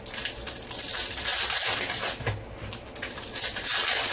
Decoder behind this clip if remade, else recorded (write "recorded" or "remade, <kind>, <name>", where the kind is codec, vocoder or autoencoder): recorded